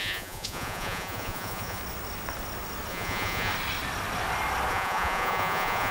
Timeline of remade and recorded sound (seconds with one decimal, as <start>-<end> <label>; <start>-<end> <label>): 0.0-1.8 remade; 1.8-2.9 recorded; 2.9-3.5 remade; 3.5-4.7 recorded; 4.7-5.9 remade